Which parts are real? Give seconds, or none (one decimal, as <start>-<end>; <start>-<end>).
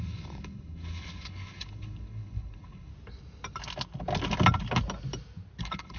2.9-5.6